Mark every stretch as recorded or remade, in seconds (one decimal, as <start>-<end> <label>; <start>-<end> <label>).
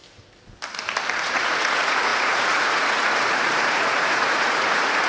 0.0-1.2 recorded; 1.2-5.1 remade